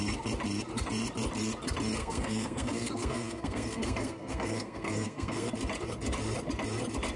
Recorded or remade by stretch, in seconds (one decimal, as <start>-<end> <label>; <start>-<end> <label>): 0.0-2.0 recorded; 2.0-5.5 remade; 5.5-7.2 recorded